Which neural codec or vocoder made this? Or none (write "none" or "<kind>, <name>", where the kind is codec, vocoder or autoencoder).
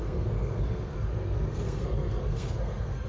codec, SNAC